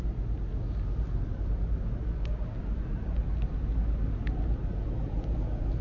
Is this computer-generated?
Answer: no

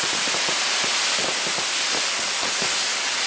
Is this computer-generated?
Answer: no